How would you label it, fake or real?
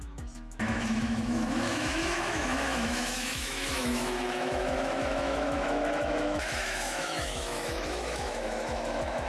fake